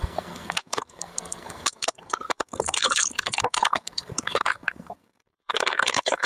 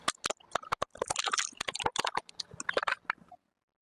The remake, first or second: first